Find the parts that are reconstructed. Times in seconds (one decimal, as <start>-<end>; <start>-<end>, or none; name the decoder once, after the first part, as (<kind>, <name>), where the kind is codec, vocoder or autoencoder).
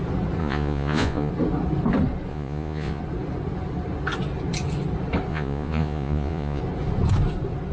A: 0.4-1.3 (vocoder, Vocos); 2.3-3.0; 5.3-6.6